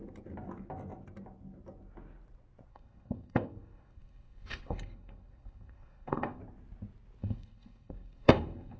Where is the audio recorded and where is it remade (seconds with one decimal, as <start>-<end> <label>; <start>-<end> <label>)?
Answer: 0.0-2.7 recorded; 2.7-6.4 remade; 6.4-7.2 recorded; 7.2-8.8 remade